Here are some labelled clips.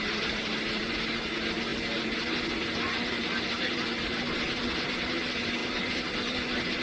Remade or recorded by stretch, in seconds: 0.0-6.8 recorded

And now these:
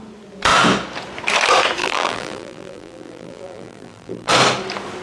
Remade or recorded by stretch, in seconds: 0.0-1.8 recorded; 1.8-4.3 remade; 4.3-5.0 recorded

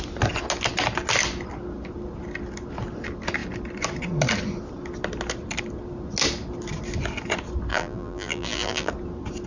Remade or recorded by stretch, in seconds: 0.0-7.7 recorded; 7.7-8.9 remade; 8.9-9.5 recorded

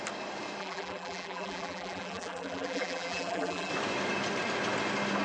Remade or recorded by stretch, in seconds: 0.0-0.6 recorded; 0.6-3.7 remade; 3.7-5.2 recorded

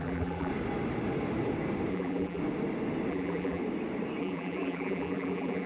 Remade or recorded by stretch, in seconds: 0.0-0.5 remade; 0.5-1.9 recorded; 1.9-2.4 remade; 2.4-3.1 recorded; 3.1-3.6 remade; 3.6-4.2 recorded; 4.2-5.7 remade

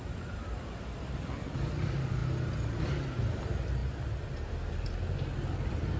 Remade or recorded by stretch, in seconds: 0.0-2.2 remade; 2.2-2.8 recorded; 2.8-3.8 remade; 3.8-4.7 recorded; 4.7-6.0 remade

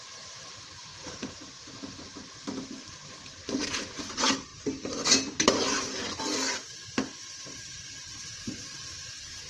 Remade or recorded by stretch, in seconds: 0.0-4.5 remade; 4.5-7.6 recorded; 7.6-9.5 remade